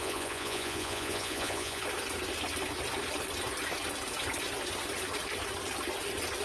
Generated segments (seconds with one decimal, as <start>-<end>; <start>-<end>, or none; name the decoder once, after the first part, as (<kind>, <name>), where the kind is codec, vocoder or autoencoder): 0.0-1.8 (vocoder, Vocos)